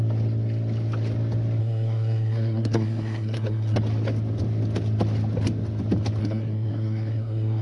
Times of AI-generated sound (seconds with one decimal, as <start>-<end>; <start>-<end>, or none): 1.6-3.8; 6.2-7.6